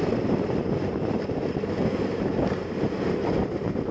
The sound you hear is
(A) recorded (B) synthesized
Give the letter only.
B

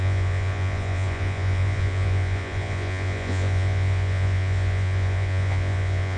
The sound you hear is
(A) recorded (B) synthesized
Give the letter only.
B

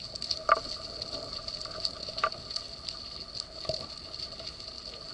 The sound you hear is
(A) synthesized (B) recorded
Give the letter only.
B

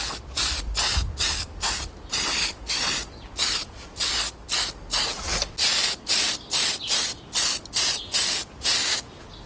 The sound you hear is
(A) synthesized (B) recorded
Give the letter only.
B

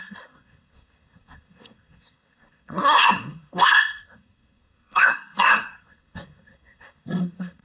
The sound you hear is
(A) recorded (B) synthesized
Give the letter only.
B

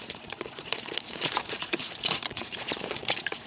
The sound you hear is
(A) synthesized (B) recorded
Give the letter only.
A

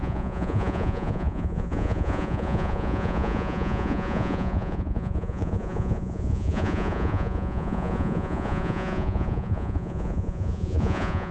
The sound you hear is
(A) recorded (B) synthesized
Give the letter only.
B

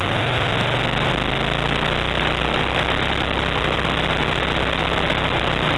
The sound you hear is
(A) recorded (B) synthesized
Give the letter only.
A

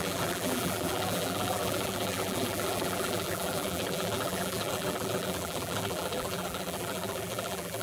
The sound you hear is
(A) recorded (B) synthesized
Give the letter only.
B